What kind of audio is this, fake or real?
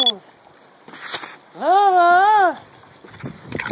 real